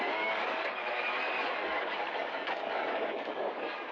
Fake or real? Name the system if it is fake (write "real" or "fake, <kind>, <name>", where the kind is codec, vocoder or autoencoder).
fake, codec, DAC